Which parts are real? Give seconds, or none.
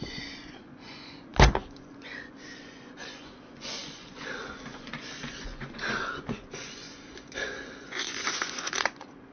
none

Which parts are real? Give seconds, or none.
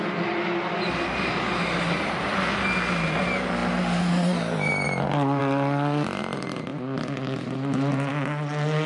0.0-8.9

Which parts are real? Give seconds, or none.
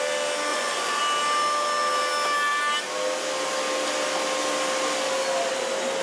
0.0-0.5; 1.0-6.0